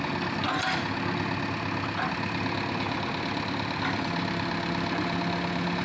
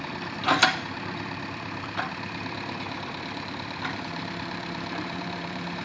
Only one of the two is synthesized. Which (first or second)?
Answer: second